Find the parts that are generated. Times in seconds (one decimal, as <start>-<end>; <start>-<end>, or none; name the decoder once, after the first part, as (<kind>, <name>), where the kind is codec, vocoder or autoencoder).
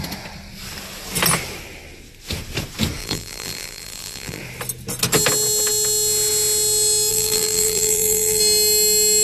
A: 3.0-4.4 (vocoder, BigVGAN v2); 7.1-8.4